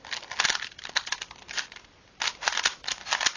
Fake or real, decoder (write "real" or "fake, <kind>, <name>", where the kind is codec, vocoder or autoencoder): real